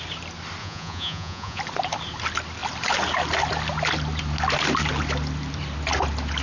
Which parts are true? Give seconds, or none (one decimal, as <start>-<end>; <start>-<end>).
0.0-0.6; 1.6-6.4